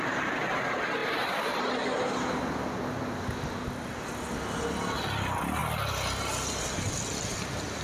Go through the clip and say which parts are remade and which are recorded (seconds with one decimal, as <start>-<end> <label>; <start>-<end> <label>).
0.0-1.0 recorded; 1.0-1.6 remade; 1.6-7.8 recorded